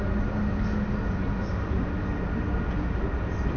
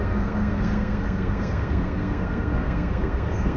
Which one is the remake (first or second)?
second